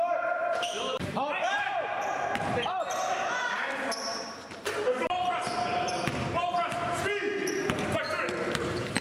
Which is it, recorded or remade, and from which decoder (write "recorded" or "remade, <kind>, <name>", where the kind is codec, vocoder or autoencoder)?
remade, vocoder, BigVGAN v2